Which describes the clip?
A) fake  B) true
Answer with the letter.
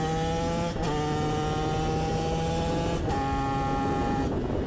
B